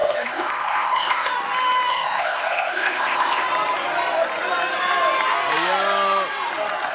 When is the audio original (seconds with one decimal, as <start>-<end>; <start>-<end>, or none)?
1.3-1.9; 3.4-6.9